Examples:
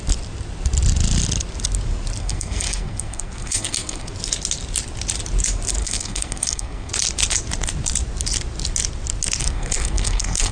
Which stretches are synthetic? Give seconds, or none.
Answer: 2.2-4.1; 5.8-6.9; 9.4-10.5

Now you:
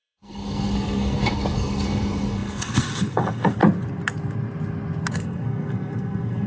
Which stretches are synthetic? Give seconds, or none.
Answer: 0.0-3.6; 5.1-6.5

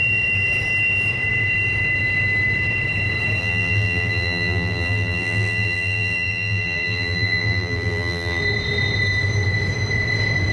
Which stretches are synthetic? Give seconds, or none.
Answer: 3.4-8.4

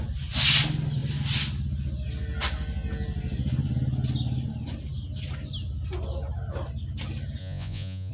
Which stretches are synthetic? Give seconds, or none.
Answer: 7.4-8.1

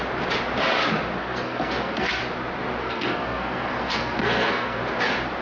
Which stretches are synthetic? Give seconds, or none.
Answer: 1.2-2.2; 2.8-4.8

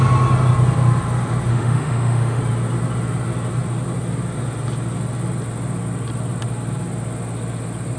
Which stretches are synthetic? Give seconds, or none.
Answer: 1.5-2.4

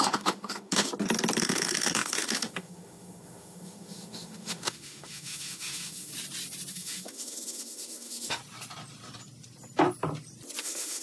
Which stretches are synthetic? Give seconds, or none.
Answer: 0.0-0.9; 1.4-6.1; 6.7-8.4; 10.6-11.0

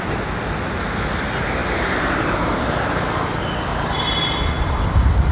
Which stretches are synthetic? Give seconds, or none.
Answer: 1.6-2.6; 3.7-4.3